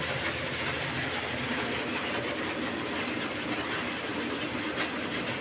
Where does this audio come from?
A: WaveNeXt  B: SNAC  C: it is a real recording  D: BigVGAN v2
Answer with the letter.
C